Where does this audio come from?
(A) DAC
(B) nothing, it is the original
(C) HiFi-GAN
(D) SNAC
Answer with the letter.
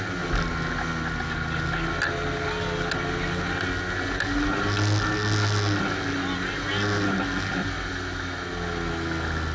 B